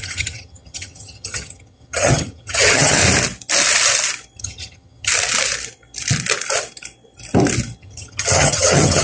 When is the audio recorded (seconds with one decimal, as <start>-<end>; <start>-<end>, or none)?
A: 3.0-4.4; 5.1-7.8